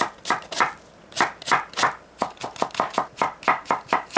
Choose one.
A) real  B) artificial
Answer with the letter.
A